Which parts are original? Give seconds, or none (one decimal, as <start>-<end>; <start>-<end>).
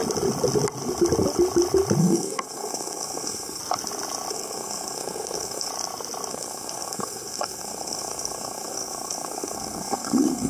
0.0-2.0; 3.6-4.3; 5.7-6.3